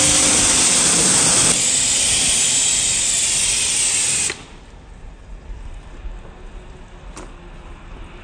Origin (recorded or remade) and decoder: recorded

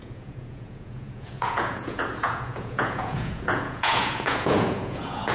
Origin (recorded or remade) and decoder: remade, vocoder, Vocos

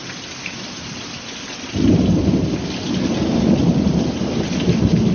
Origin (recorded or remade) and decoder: recorded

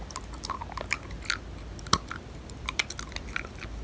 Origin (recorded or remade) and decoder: recorded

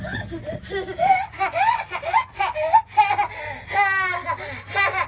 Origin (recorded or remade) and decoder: recorded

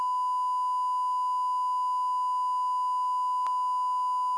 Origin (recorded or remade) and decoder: recorded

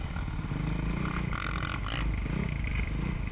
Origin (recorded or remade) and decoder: recorded